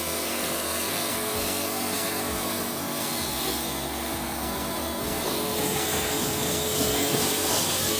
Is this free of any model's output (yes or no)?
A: no